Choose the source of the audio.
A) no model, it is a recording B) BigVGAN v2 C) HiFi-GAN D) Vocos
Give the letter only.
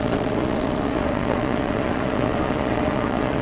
D